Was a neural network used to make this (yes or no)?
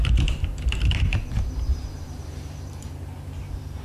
yes